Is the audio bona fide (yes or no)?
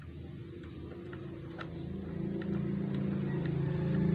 yes